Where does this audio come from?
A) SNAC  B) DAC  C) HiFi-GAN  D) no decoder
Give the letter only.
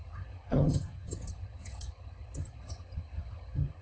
C